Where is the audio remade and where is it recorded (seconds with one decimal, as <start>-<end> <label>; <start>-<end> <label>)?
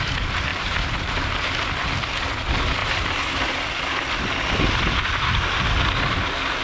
0.0-0.5 recorded; 0.5-1.5 remade; 1.5-2.8 recorded; 2.8-3.6 remade; 3.6-6.6 recorded